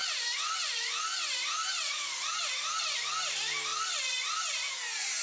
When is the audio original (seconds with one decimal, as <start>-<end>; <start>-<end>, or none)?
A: 3.1-3.7; 4.7-5.2